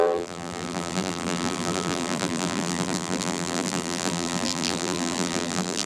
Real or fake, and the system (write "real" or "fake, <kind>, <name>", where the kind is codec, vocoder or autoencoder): fake, vocoder, BigVGAN v2